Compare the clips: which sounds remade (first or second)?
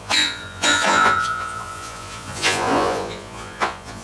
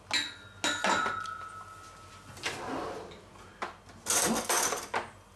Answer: first